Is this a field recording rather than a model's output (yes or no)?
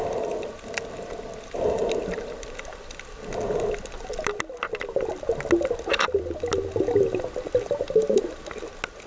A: yes